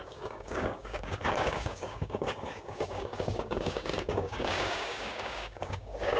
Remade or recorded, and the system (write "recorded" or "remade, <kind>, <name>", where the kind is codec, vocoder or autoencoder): remade, codec, DAC